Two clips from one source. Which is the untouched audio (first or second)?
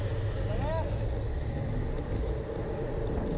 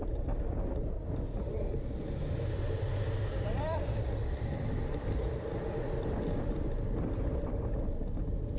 first